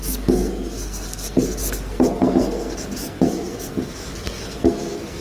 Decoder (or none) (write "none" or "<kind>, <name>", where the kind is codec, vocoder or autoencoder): codec, SNAC